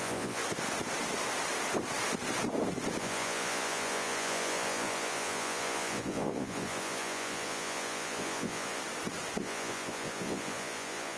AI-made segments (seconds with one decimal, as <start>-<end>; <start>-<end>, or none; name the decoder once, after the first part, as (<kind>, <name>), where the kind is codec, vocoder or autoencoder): 0.0-0.4 (vocoder, Vocos); 3.0-8.8; 9.4-11.2

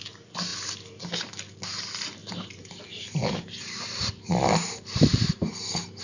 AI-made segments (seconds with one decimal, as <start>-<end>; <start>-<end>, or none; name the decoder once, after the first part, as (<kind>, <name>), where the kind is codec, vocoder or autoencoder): 2.2-6.0 (vocoder, BigVGAN v2)

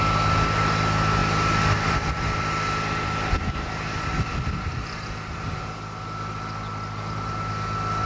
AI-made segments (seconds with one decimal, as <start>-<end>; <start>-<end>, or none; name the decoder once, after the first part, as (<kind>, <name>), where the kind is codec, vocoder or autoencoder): none